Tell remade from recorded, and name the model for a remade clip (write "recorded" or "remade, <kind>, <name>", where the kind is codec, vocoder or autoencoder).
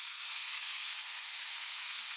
remade, codec, SNAC